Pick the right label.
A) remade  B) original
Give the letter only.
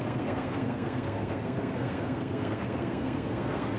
A